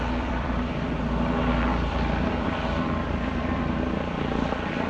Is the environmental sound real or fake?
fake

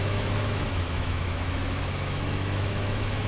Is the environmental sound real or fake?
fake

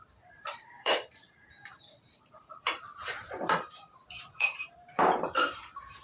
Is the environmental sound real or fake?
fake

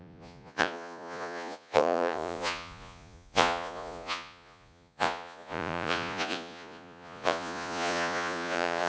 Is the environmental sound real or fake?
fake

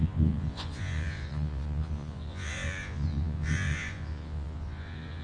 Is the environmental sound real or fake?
fake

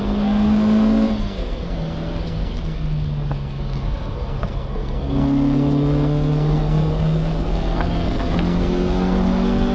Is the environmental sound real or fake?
fake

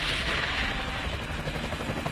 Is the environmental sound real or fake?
real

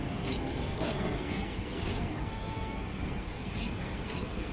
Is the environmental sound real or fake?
fake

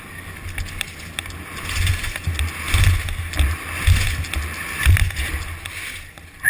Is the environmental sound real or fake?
real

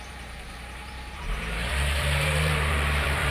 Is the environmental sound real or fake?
fake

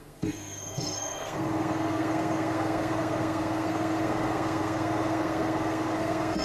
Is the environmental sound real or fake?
fake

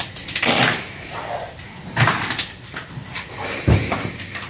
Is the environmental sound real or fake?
real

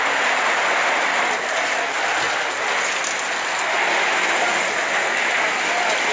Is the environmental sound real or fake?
real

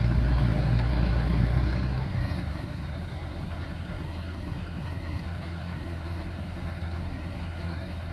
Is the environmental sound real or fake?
fake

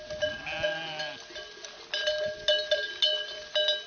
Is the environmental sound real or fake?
real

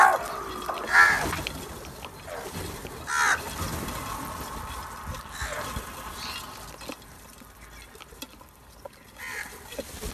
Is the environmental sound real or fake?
real